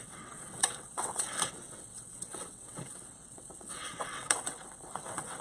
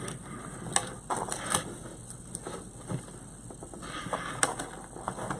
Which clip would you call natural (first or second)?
second